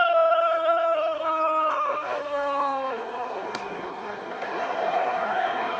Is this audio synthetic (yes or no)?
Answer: yes